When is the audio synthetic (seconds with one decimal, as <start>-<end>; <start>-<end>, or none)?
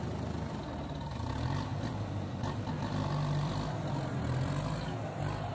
1.7-3.5